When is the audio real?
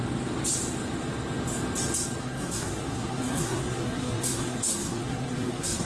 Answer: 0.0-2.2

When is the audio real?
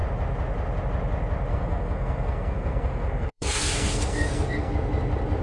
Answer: 0.0-1.5; 4.7-5.4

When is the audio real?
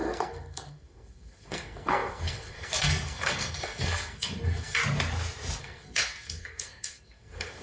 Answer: 4.8-5.6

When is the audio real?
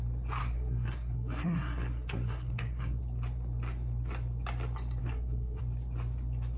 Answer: 0.0-0.4; 3.0-5.0; 5.6-6.6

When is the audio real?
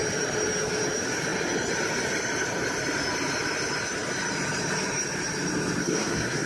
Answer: 0.0-5.8